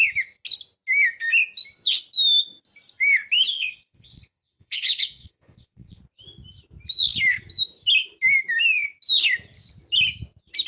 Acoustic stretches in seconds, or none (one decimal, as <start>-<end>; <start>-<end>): 0.0-3.5; 6.0-10.7